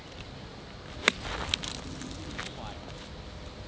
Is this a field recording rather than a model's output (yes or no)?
yes